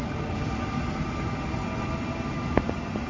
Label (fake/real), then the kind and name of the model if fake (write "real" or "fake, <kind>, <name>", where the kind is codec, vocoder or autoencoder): real